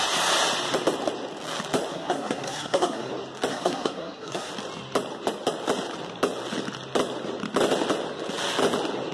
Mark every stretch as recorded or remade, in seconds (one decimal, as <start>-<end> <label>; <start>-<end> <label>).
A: 0.0-1.9 recorded; 1.9-3.1 remade; 3.1-3.5 recorded; 3.5-4.5 remade; 4.5-9.1 recorded